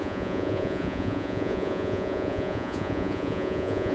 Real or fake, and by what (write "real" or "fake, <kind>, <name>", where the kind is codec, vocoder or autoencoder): fake, vocoder, Vocos